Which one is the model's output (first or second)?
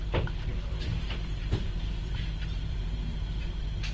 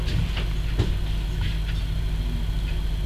first